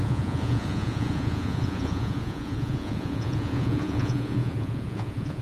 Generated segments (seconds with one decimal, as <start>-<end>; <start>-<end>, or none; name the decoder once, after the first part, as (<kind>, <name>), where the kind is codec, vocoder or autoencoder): 0.0-5.4 (vocoder, Vocos)